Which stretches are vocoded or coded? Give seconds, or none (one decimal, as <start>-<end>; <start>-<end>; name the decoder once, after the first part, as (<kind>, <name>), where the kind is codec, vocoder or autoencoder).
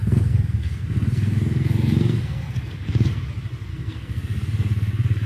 0.0-3.2 (codec, SNAC); 3.7-5.3